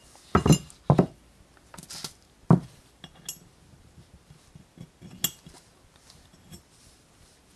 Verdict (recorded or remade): recorded